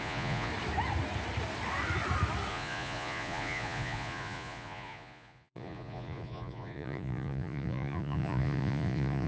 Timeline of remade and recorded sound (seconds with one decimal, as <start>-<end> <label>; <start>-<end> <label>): 0.0-0.5 remade; 0.5-2.5 recorded; 2.5-9.3 remade